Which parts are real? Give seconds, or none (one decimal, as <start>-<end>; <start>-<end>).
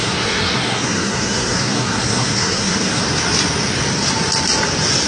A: 3.0-5.1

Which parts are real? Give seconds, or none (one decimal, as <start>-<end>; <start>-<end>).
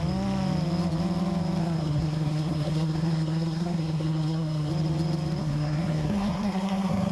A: 0.0-1.6; 4.7-5.4